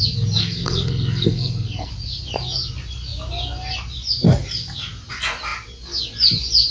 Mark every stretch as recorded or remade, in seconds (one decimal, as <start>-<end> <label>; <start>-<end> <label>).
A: 0.0-0.4 recorded; 0.4-1.9 remade; 1.9-6.7 recorded